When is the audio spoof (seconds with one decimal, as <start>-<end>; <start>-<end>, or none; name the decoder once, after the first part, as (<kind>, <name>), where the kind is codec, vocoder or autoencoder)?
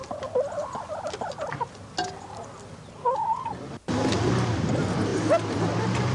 none